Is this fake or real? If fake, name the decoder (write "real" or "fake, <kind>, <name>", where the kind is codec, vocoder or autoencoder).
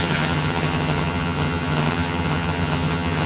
fake, vocoder, HiFi-GAN